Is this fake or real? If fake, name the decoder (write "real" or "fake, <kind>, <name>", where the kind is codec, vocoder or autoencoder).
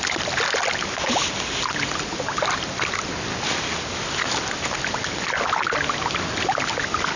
real